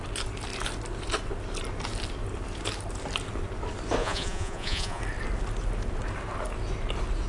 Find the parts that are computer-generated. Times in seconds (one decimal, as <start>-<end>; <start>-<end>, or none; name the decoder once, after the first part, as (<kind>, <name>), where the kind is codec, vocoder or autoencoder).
4.0-5.0 (vocoder, Vocos)